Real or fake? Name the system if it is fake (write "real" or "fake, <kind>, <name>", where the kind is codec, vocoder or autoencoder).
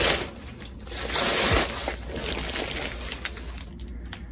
real